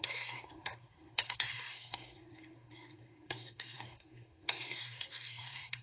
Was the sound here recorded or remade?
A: remade